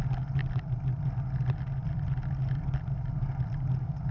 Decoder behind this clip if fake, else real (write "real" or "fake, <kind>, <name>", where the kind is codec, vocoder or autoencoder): real